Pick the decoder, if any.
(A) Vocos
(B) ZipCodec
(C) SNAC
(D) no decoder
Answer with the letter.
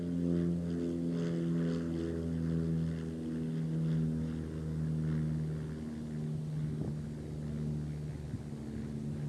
D